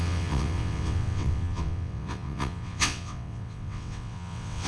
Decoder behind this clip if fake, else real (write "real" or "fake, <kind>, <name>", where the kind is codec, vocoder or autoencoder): fake, vocoder, WaveNeXt